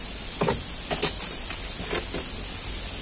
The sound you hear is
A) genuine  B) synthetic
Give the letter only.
A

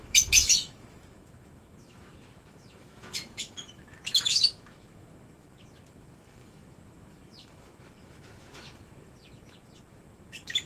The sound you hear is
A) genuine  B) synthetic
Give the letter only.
B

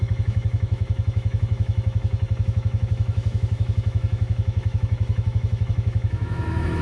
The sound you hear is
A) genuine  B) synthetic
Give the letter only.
B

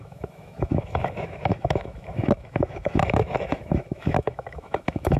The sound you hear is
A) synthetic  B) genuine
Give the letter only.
A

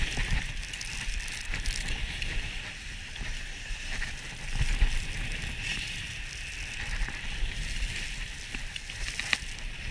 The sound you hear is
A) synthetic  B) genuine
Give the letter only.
B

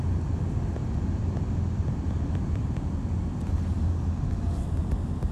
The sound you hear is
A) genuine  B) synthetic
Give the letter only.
A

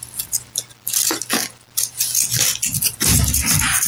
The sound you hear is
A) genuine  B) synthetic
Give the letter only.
A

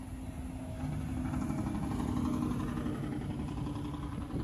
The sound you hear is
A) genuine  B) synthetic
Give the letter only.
A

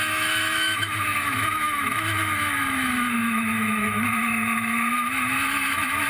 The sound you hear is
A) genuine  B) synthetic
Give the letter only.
B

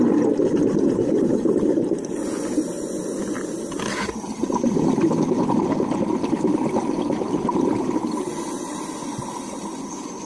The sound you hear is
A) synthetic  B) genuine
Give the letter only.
B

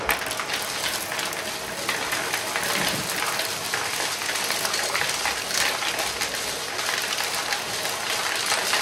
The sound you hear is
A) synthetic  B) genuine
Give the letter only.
B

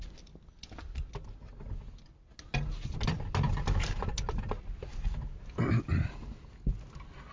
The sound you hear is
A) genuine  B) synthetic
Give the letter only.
A